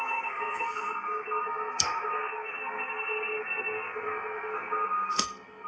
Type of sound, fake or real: fake